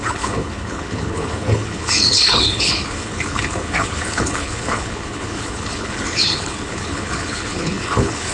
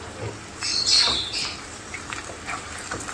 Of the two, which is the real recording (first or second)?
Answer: second